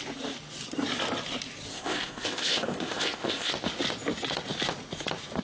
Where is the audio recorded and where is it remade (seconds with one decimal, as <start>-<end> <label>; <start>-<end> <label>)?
0.0-1.7 recorded; 1.7-3.5 remade; 3.5-5.4 recorded